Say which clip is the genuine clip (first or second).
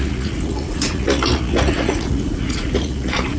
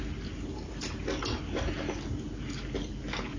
second